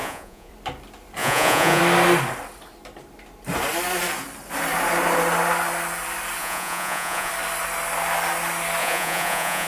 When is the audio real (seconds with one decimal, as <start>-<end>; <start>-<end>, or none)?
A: 0.5-1.2; 1.8-6.4; 7.3-8.8